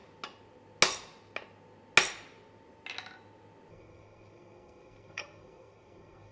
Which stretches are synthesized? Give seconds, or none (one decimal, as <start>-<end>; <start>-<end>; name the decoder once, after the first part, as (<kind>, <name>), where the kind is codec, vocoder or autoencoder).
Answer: 3.7-6.3 (codec, SNAC)